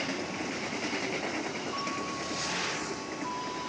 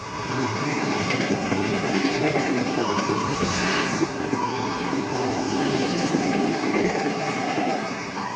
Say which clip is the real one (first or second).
first